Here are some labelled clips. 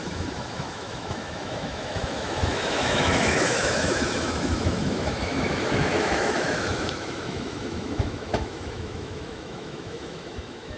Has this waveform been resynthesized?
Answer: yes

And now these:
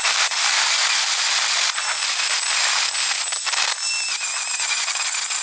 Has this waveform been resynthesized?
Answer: no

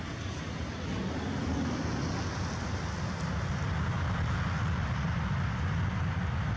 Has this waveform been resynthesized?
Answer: no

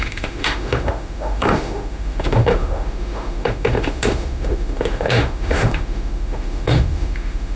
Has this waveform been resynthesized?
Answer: yes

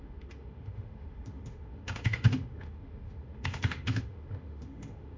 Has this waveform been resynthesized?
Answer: yes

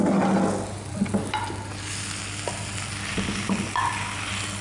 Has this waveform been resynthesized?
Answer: no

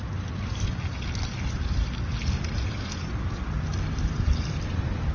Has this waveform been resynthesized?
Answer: no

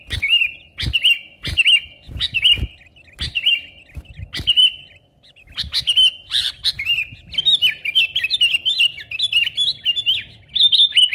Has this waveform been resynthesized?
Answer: no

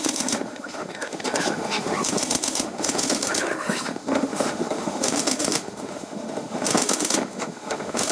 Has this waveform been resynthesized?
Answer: yes